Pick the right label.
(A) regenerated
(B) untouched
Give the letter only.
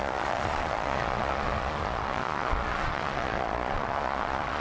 A